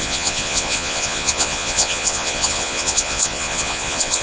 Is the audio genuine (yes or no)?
no